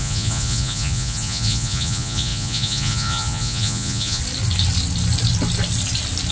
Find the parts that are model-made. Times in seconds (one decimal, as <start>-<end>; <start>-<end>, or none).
0.0-4.2